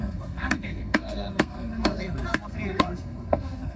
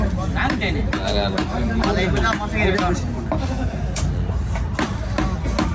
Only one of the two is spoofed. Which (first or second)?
first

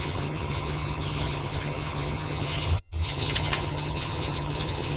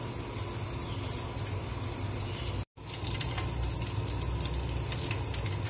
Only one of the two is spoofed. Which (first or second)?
first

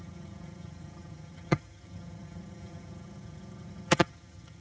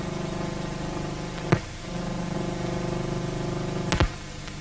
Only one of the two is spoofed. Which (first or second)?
first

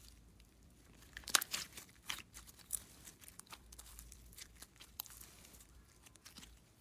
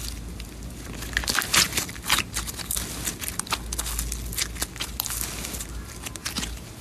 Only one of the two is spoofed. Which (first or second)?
first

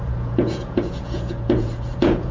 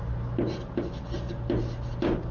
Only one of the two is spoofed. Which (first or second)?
first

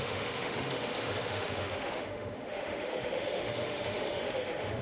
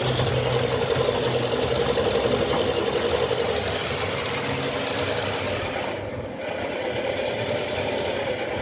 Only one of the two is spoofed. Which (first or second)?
first